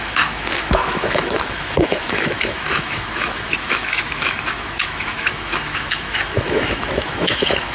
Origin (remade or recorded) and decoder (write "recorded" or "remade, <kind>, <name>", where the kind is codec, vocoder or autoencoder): remade, autoencoder, DAC-VAE